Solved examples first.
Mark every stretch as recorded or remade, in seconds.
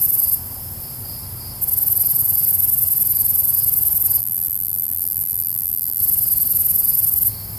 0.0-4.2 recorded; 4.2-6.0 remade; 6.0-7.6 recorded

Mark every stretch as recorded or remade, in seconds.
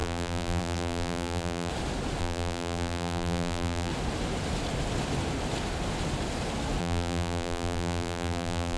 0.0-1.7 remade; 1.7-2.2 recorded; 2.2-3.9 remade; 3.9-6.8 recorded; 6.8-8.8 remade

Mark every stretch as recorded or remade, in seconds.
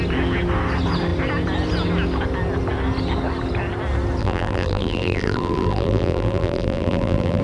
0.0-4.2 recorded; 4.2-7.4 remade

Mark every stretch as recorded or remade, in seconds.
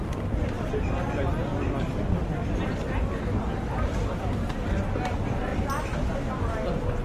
0.0-1.5 recorded; 1.5-2.6 remade; 2.6-7.0 recorded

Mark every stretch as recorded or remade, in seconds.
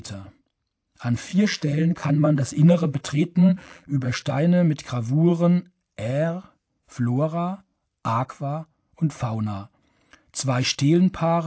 0.0-1.3 recorded; 1.3-4.3 remade; 4.3-11.5 recorded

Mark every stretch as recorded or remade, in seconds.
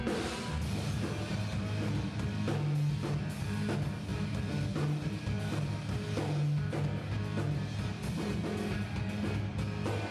0.0-10.1 recorded